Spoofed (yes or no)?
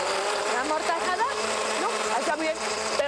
no